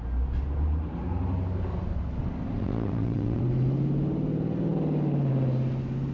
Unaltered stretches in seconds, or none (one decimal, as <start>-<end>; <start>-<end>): 0.0-2.6; 3.4-6.1